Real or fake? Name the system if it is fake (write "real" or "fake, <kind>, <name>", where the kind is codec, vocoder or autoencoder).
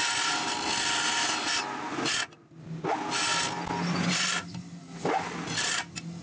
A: real